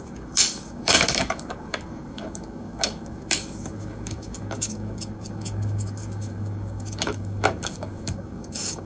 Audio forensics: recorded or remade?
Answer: remade